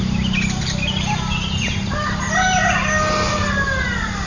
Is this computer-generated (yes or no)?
no